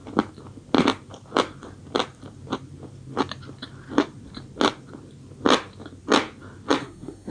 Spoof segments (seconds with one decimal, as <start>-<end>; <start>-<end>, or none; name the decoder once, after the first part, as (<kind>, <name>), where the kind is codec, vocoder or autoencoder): 6.8-7.3 (codec, SNAC)